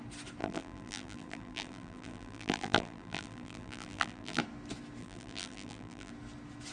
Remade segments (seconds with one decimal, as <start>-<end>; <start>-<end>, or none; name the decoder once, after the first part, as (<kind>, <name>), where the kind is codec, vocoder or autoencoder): 0.4-4.4 (vocoder, BigVGAN v2); 5.0-6.1